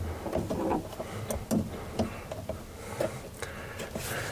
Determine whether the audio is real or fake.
real